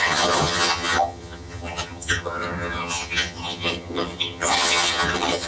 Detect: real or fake fake